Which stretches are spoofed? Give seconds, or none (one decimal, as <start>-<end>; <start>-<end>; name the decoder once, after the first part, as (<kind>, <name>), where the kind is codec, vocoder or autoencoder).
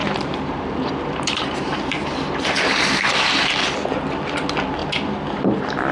0.0-3.5 (vocoder, BigVGAN v2)